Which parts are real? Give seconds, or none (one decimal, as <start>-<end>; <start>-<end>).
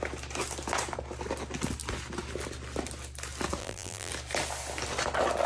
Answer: 0.0-3.6; 4.1-5.5